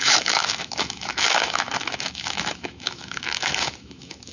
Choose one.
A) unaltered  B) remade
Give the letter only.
B